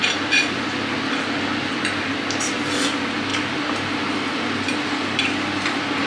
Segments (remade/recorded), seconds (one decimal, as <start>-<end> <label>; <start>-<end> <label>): 0.0-6.1 recorded